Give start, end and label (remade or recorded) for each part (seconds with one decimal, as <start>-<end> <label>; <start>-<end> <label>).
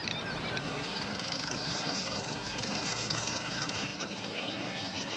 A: 0.0-0.6 recorded; 0.6-5.2 remade